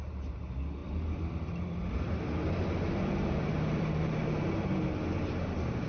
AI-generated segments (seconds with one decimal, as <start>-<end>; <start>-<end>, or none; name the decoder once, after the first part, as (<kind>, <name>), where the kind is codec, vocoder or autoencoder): 0.8-4.3 (vocoder, BigVGAN v2)